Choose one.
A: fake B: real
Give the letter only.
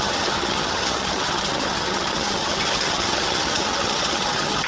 A